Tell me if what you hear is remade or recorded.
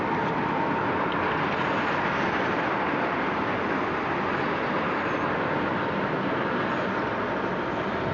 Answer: recorded